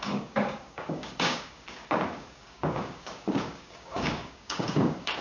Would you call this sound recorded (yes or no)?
no